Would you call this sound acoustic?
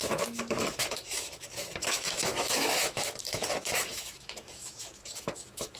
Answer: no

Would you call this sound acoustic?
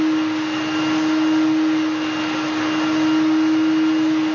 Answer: yes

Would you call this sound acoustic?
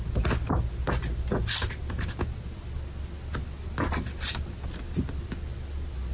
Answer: yes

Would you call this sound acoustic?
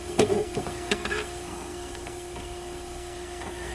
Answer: no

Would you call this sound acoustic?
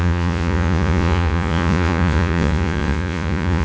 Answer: no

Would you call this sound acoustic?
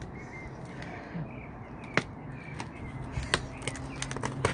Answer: yes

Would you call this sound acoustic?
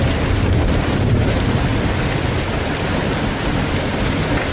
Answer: yes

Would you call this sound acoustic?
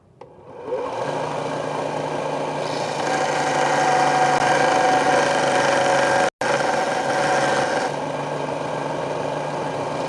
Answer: yes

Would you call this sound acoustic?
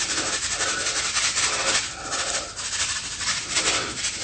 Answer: yes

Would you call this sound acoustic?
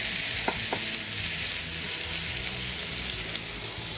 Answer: yes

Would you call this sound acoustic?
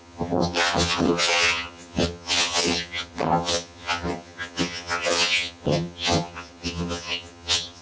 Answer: no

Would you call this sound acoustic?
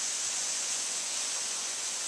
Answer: no